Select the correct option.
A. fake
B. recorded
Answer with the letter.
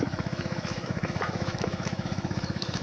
A